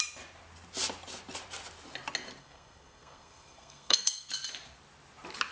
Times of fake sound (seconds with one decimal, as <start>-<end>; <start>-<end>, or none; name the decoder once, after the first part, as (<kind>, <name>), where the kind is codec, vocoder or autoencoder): 2.4-4.3 (codec, SNAC)

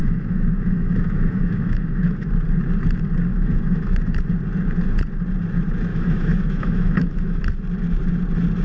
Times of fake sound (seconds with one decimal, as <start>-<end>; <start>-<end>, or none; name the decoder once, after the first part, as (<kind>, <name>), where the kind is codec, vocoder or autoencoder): 0.0-2.3 (autoencoder, DAC-VAE); 3.3-4.3; 5.9-7.4

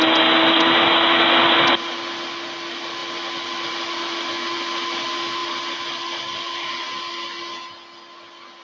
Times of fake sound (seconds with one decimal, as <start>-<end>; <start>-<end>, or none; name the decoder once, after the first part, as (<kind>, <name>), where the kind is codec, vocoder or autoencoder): 3.0-3.7 (vocoder, BigVGAN v2); 5.4-6.7

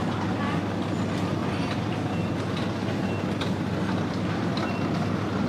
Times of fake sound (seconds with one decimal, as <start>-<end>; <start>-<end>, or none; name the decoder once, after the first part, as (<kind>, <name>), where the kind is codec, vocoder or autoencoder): none

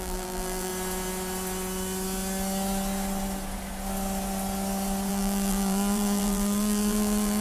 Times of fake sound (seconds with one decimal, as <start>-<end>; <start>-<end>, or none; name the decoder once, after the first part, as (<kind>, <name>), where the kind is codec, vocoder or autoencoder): 0.0-0.7 (vocoder, BigVGAN v2); 5.1-7.4

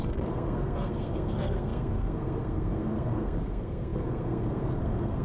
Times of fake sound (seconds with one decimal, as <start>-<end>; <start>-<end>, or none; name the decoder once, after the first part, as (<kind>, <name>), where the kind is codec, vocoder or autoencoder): 0.0-5.2 (codec, SNAC)

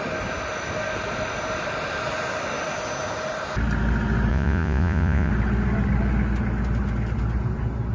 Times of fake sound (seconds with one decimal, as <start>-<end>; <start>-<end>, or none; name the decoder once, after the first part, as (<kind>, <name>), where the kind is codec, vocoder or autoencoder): 4.3-5.3 (vocoder, Vocos)